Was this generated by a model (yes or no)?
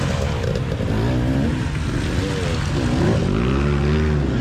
no